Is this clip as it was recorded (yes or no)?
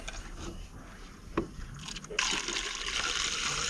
yes